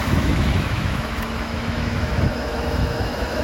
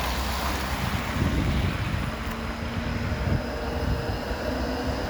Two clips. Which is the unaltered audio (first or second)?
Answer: second